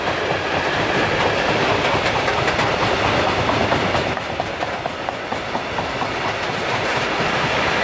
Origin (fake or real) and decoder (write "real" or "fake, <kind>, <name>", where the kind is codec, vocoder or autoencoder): real